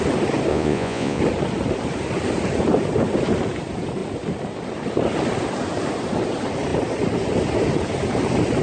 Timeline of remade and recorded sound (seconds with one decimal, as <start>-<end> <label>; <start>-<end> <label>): 0.0-0.5 recorded; 0.5-1.2 remade; 1.2-8.6 recorded

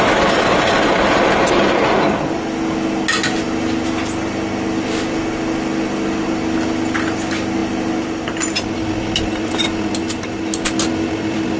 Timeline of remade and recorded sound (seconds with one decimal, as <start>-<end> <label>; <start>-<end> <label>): 0.0-11.6 recorded

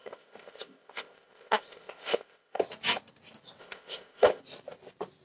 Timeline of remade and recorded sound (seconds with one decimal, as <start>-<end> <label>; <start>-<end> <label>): 0.0-2.6 remade; 2.6-3.6 recorded; 3.6-4.4 remade; 4.4-5.2 recorded

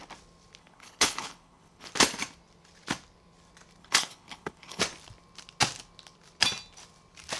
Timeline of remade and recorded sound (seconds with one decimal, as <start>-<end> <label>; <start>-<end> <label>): 0.0-0.6 recorded; 0.6-1.9 remade; 1.9-3.8 recorded; 3.8-4.8 remade; 4.8-7.4 recorded

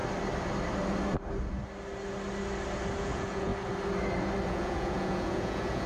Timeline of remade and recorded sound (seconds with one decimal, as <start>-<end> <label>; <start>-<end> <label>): 0.0-3.0 recorded; 3.0-3.5 remade; 3.5-4.5 recorded; 4.5-5.9 remade

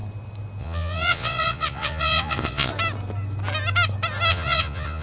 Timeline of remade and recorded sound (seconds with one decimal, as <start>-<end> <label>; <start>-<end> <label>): 0.0-0.6 recorded; 0.6-2.7 remade; 2.7-4.3 recorded; 4.3-5.0 remade

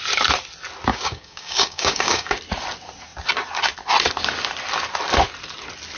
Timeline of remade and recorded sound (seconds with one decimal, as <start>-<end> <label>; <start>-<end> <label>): 0.0-0.9 recorded; 0.9-2.4 remade; 2.4-6.0 recorded

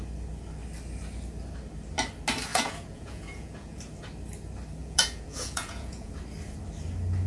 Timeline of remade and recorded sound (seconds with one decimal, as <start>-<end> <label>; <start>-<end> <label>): 0.0-2.5 recorded; 2.5-3.8 remade; 3.8-4.8 recorded; 4.8-6.1 remade; 6.1-7.3 recorded